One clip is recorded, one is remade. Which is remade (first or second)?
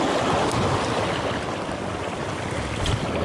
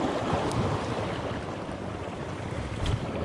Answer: second